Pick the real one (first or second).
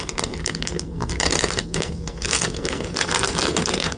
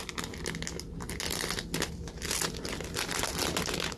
second